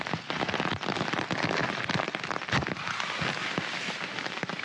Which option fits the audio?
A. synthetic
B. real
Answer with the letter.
B